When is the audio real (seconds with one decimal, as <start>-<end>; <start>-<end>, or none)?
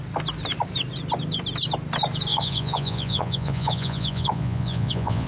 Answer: 0.0-2.3